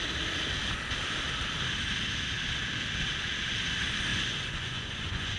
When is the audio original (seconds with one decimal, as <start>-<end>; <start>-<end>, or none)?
0.0-4.1